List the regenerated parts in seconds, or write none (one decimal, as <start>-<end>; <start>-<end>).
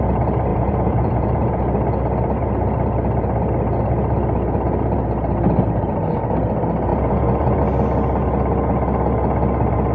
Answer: 0.5-1.6; 6.9-7.6